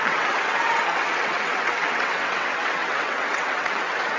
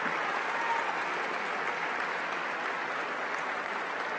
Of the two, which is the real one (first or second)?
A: second